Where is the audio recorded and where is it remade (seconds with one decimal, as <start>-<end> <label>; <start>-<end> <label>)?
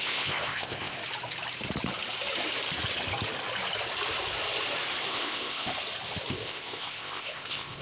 0.0-1.0 remade; 1.0-5.1 recorded; 5.1-5.7 remade; 5.7-6.3 recorded; 6.3-7.8 remade